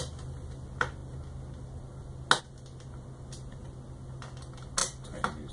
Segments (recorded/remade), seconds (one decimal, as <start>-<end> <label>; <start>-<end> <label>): 0.0-5.5 recorded